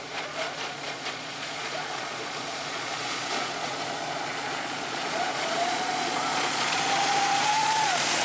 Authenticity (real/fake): fake